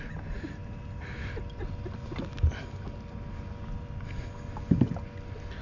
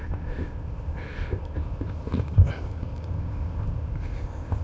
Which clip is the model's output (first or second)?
second